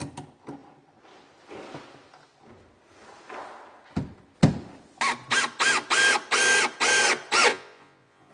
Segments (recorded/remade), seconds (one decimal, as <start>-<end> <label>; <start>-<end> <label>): 0.0-7.5 recorded; 7.5-8.3 remade